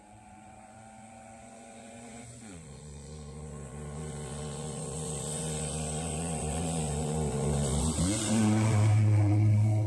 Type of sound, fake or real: fake